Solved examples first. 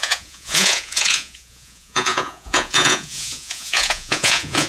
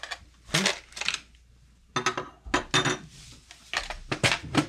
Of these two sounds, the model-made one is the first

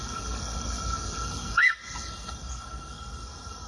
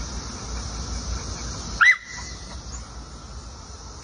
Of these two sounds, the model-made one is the first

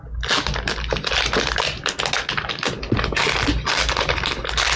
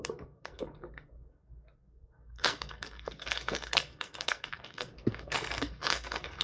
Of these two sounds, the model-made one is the second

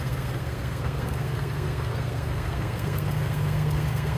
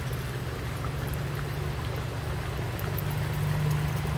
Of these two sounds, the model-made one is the first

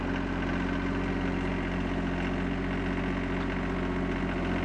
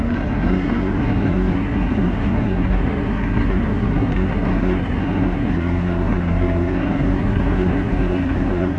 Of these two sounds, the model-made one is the second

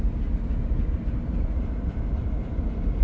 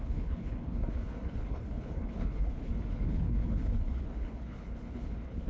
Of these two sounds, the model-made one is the second